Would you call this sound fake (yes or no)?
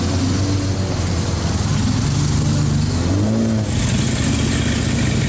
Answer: no